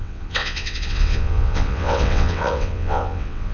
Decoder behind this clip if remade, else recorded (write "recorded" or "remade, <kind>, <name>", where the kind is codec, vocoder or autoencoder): remade, vocoder, WaveNeXt